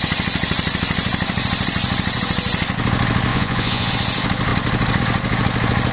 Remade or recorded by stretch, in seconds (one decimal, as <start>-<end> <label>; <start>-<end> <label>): 0.0-3.3 recorded; 3.3-3.9 remade; 3.9-5.9 recorded